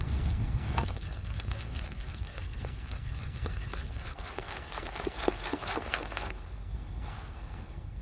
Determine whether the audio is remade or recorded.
remade